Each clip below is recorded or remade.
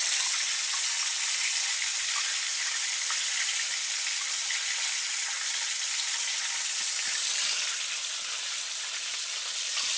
recorded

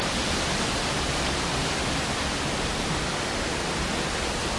recorded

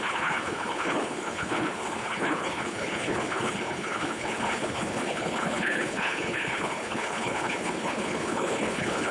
remade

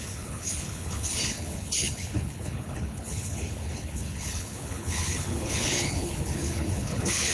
remade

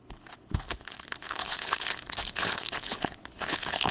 remade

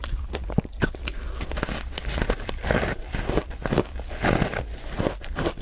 recorded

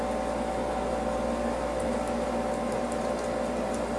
recorded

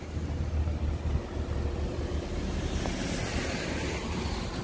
recorded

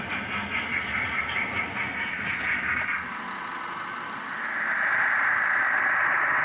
recorded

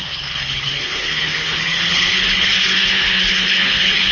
remade